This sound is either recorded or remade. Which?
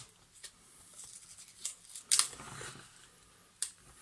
recorded